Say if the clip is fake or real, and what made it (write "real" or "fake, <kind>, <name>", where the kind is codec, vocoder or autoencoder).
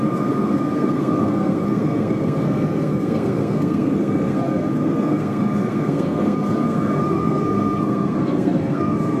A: fake, codec, SNAC